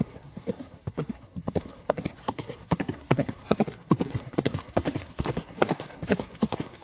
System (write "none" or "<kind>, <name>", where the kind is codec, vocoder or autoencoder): codec, SNAC